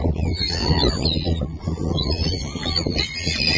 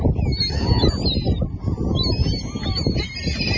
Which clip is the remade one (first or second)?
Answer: first